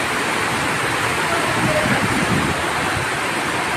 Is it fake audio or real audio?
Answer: fake